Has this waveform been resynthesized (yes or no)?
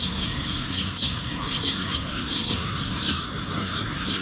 yes